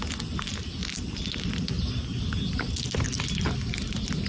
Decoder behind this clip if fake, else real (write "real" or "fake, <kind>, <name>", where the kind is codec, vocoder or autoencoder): real